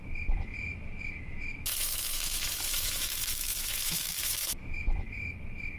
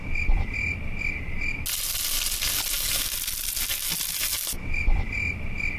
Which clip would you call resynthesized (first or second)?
first